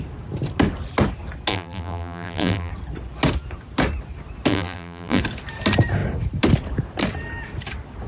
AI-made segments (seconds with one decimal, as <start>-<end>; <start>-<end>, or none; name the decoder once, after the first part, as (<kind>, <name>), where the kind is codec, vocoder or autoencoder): 1.5-2.7 (vocoder, BigVGAN v2); 4.5-5.2